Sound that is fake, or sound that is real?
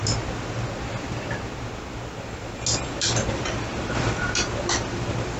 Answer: real